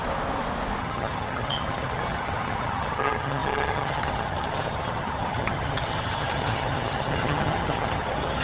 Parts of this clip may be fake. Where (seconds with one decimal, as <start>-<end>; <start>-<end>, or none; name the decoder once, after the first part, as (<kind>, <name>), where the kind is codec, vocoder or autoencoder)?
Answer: 0.8-8.4 (vocoder, HiFi-GAN)